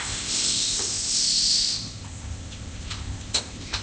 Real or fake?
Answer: fake